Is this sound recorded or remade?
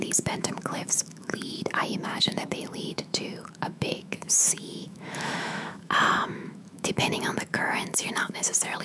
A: remade